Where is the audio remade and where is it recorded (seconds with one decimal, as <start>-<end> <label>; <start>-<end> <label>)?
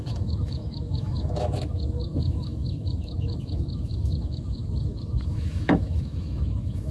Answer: 0.0-6.9 remade